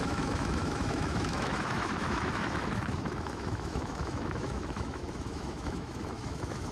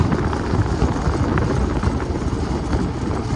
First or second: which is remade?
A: first